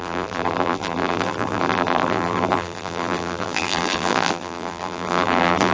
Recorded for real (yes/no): no